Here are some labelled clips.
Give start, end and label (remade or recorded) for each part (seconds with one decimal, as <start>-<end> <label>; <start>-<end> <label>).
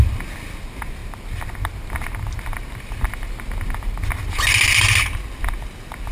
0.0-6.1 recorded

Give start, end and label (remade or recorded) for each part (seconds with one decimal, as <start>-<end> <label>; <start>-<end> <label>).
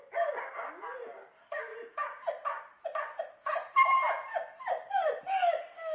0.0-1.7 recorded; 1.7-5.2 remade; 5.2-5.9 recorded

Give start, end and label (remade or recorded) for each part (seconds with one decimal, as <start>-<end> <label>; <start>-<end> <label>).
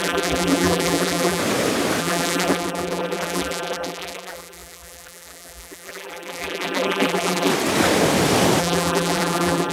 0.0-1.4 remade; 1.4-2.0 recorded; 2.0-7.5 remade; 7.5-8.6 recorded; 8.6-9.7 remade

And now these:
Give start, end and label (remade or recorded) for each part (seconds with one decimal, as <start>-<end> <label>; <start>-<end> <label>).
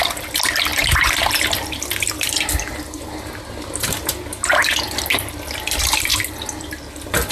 0.0-7.3 recorded